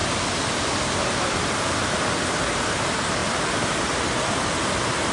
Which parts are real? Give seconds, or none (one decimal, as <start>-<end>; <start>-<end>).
0.0-5.1